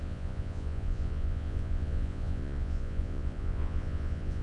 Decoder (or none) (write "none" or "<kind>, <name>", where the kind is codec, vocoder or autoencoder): vocoder, Vocos